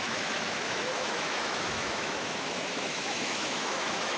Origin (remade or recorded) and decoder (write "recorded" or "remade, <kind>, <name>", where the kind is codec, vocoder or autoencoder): remade, autoencoder, DAC-VAE